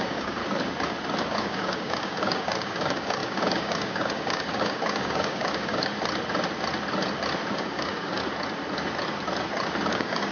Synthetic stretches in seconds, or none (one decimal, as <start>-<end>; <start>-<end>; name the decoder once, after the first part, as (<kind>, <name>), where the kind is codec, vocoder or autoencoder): 0.0-0.4 (codec, DAC); 1.3-5.9; 7.5-8.2; 9.9-10.3